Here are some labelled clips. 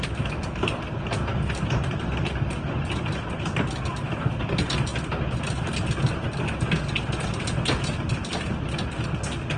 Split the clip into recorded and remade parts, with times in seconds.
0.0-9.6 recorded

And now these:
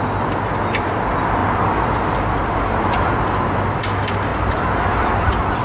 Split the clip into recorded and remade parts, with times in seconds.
0.0-1.4 recorded; 1.4-3.8 remade; 3.8-4.3 recorded; 4.3-5.6 remade

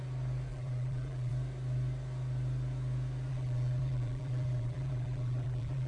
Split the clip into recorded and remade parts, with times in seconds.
0.0-0.5 recorded; 0.5-1.3 remade; 1.3-3.3 recorded; 3.3-5.9 remade

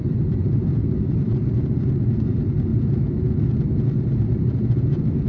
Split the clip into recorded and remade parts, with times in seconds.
0.0-2.7 remade; 2.7-4.0 recorded; 4.0-5.3 remade

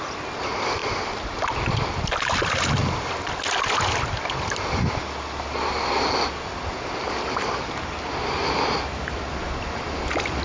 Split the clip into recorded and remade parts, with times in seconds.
0.0-10.4 recorded

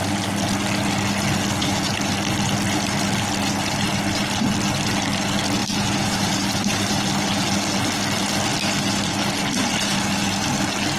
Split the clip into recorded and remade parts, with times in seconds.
0.0-1.6 recorded; 1.6-2.1 remade; 2.1-5.6 recorded; 5.6-7.0 remade; 7.0-11.0 recorded

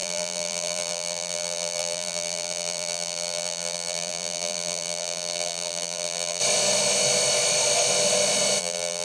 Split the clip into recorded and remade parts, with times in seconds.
0.0-6.4 remade; 6.4-8.6 recorded; 8.6-9.0 remade

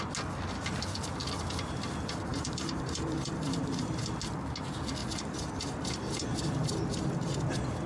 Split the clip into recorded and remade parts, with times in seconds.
0.0-2.3 recorded; 2.3-4.1 remade; 4.1-5.0 recorded; 5.0-7.5 remade; 7.5-7.9 recorded